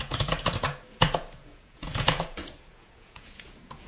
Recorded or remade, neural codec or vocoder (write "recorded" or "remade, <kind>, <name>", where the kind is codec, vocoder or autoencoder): remade, vocoder, Vocos